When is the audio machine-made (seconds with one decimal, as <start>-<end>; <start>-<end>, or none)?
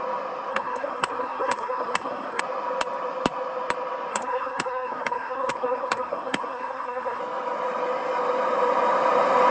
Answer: 0.5-2.4; 4.1-7.2